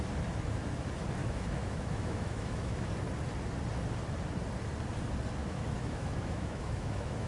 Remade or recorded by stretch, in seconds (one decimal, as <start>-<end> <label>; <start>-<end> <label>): 0.0-1.2 recorded; 1.2-2.9 remade; 2.9-5.4 recorded; 5.4-7.3 remade